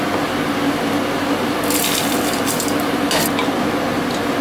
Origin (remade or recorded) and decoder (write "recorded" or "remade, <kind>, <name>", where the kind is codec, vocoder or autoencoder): recorded